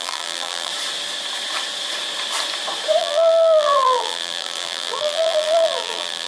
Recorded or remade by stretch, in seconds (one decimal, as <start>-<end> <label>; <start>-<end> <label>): 0.0-0.7 remade; 0.7-3.0 recorded; 3.0-6.3 remade